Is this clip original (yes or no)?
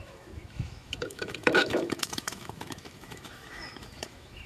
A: no